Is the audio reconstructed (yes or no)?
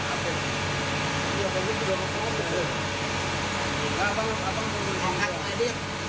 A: no